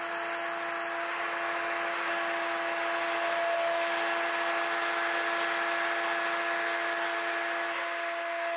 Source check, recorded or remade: recorded